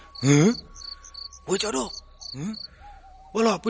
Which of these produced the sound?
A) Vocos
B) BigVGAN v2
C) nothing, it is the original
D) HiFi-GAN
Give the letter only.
C